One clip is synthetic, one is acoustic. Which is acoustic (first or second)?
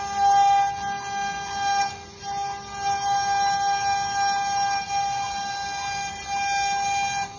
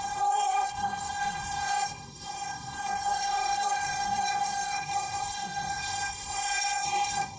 first